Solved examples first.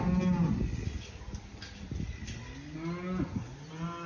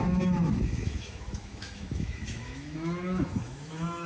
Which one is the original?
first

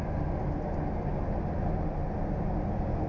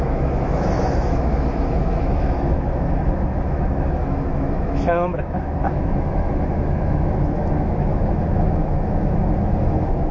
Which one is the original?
first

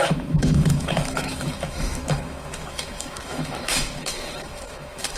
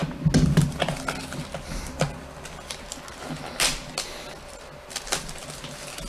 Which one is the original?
second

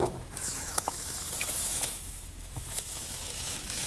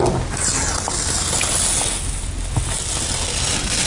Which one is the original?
second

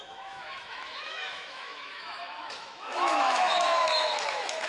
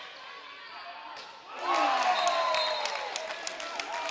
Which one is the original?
second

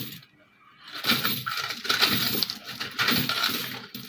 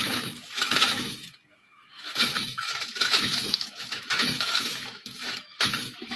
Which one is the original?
first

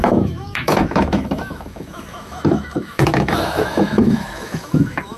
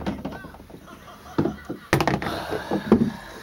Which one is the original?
second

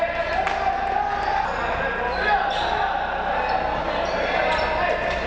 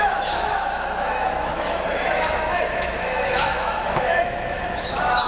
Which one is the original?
first